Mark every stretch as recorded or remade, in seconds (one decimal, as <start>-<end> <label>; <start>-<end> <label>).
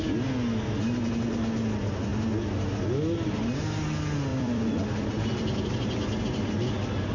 0.0-4.3 recorded; 4.3-6.2 remade; 6.2-7.1 recorded